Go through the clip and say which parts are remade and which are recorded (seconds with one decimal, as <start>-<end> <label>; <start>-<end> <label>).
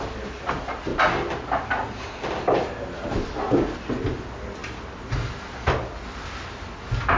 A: 0.0-7.2 recorded